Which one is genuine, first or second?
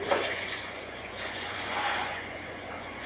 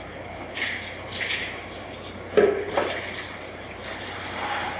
second